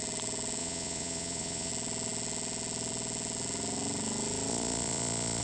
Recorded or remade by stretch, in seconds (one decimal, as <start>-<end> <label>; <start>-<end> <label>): 0.0-0.6 recorded; 0.6-1.7 remade; 1.7-4.5 recorded; 4.5-5.4 remade